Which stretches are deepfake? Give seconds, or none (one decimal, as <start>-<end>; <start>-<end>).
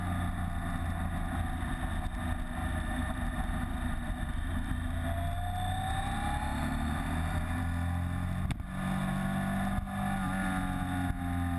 2.6-4.7; 6.5-7.6